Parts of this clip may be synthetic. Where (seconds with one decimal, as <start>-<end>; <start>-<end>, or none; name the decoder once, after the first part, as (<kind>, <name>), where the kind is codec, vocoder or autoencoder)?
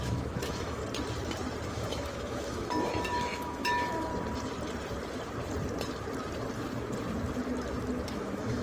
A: 0.0-0.8 (autoencoder, DAC-VAE); 1.7-4.1; 8.1-8.6